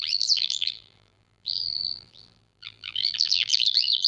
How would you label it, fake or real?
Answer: fake